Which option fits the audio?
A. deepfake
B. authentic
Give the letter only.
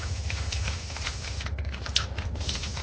A